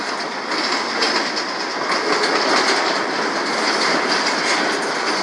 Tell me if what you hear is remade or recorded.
recorded